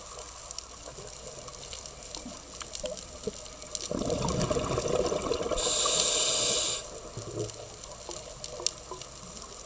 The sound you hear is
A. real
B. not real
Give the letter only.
A